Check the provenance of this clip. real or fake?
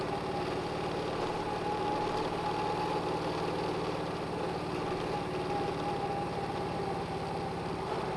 real